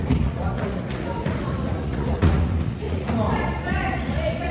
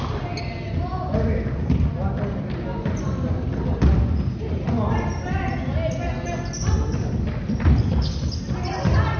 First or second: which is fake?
first